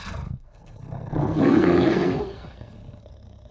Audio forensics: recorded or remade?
remade